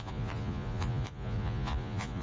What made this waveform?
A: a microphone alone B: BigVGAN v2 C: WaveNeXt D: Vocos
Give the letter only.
D